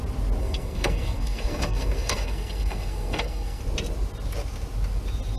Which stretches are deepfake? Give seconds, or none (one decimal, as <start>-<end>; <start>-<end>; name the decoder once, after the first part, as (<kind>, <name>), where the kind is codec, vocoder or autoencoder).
0.4-3.6 (codec, SNAC)